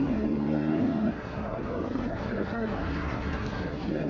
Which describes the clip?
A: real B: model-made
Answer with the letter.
B